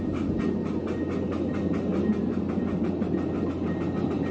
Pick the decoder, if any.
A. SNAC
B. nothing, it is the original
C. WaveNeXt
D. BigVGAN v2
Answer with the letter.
B